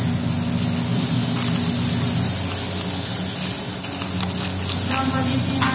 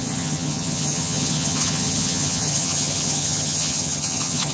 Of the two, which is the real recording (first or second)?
first